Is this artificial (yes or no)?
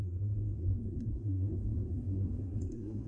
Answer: yes